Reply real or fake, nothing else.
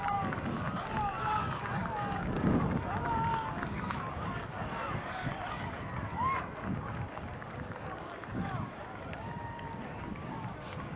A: fake